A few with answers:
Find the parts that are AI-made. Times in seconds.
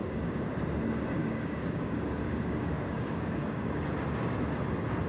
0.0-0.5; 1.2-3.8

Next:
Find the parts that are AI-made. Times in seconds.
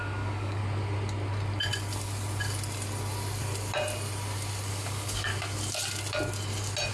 0.0-0.6; 4.7-5.3